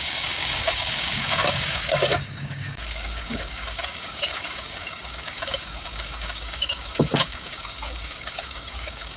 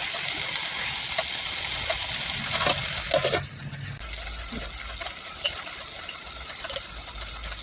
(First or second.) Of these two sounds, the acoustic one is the second